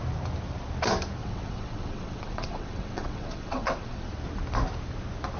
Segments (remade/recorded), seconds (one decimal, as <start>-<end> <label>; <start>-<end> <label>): 0.0-1.2 recorded; 1.2-4.1 remade; 4.1-5.4 recorded